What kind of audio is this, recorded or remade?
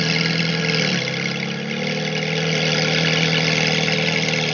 recorded